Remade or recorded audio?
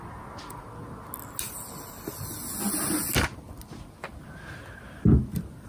recorded